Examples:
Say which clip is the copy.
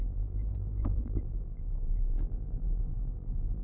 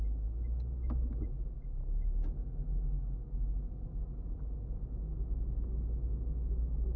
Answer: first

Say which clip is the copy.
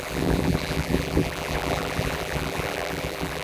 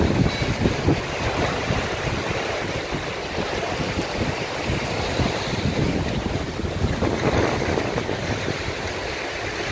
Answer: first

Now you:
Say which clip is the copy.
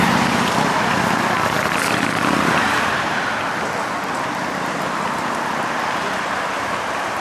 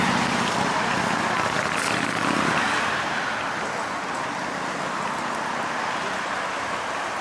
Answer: first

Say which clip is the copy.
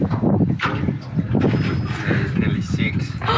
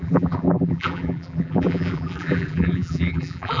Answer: second